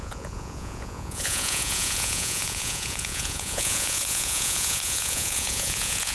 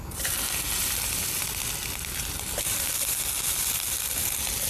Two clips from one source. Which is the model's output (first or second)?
first